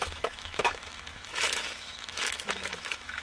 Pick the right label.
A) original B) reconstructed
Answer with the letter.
B